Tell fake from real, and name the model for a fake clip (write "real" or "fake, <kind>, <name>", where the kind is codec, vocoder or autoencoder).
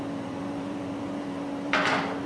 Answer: fake, vocoder, BigVGAN v2